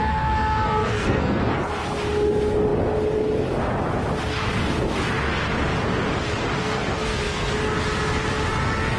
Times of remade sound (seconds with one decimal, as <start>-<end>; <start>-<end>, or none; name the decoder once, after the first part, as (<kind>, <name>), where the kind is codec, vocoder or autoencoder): 0.0-1.4 (codec, SNAC); 6.6-7.5